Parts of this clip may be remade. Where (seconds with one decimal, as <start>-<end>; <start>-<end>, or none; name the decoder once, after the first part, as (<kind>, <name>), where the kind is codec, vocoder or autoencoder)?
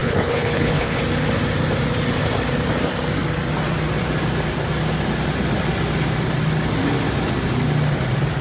0.0-1.0 (codec, HILCodec)